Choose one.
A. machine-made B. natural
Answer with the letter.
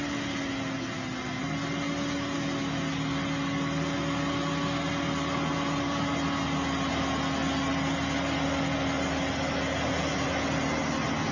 B